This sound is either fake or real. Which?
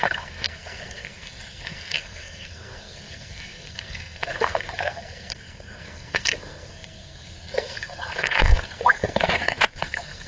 fake